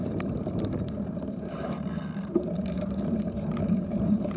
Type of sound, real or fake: fake